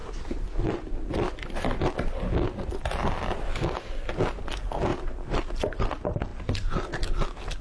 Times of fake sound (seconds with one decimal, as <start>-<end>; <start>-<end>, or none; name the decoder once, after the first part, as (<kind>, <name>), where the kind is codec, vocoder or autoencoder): 4.9-5.8 (vocoder, BigVGAN v2)